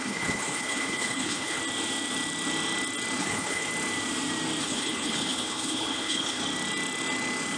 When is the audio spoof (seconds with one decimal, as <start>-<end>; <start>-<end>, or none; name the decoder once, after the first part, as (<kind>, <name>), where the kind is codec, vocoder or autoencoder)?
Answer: 0.0-1.6 (codec, HILCodec); 3.2-3.7; 4.6-6.4